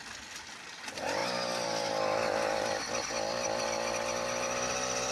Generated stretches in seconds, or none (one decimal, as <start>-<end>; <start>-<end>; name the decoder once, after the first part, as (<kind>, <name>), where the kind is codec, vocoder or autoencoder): none